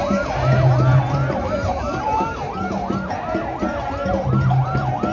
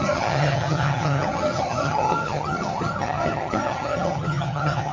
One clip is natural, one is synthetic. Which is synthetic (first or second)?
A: second